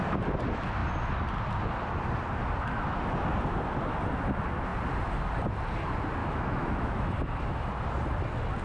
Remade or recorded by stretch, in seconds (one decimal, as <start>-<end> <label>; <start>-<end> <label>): 0.0-6.2 recorded; 6.2-7.1 remade; 7.1-8.6 recorded